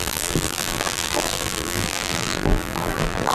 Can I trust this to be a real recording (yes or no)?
no